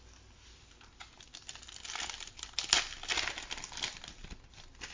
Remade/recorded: recorded